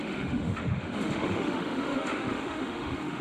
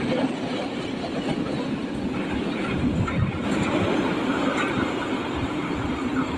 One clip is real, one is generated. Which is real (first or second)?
second